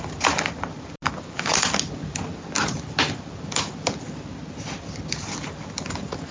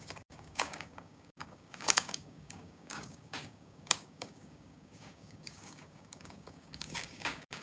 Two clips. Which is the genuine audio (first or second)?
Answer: first